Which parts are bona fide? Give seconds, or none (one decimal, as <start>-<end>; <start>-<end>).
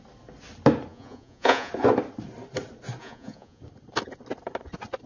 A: 0.0-0.9; 1.7-3.0; 3.6-5.1